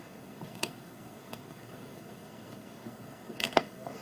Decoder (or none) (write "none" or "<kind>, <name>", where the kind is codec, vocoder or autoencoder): codec, SNAC